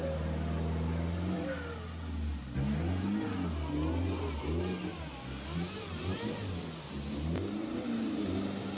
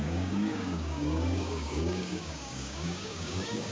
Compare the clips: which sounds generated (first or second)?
second